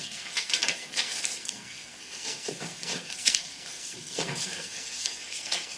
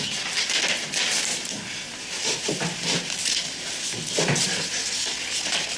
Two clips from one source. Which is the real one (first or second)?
second